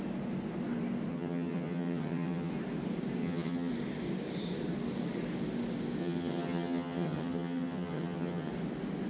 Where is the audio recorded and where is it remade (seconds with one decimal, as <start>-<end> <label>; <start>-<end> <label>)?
0.0-1.1 recorded; 1.1-2.5 remade; 2.5-3.2 recorded; 3.2-3.7 remade; 3.7-6.0 recorded; 6.0-8.5 remade; 8.5-9.1 recorded